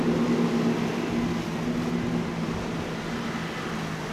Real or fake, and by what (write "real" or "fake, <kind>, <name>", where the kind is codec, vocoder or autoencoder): real